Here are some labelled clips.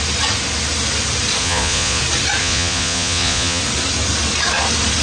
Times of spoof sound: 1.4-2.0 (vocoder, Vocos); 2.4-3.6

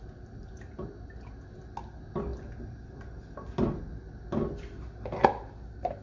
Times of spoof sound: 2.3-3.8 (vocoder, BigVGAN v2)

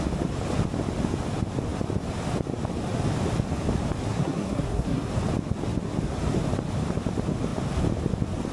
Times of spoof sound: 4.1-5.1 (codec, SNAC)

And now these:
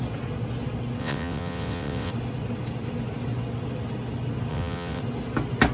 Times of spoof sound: 1.0-2.1 (vocoder, WaveNeXt); 4.5-5.0

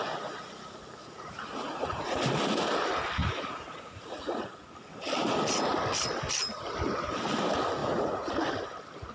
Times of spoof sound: 1.0-2.2 (vocoder, Vocos); 3.2-4.7; 7.8-8.3

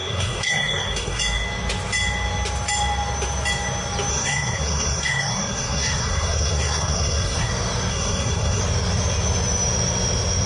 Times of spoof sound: 0.0-1.2 (codec, SNAC); 4.1-7.5; 7.9-8.6

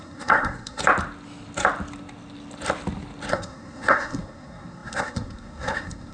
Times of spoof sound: 0.0-0.8 (codec, SNAC); 3.3-6.1